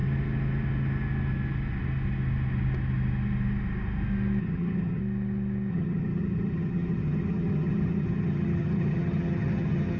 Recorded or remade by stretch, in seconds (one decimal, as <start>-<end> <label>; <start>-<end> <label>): 0.0-4.4 recorded; 4.4-5.0 remade; 5.0-5.7 recorded; 5.7-10.0 remade